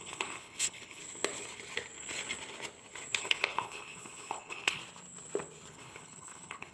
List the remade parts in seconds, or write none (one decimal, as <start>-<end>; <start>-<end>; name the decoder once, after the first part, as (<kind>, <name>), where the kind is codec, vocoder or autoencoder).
0.0-1.0 (codec, HILCodec); 3.2-4.8; 5.7-6.7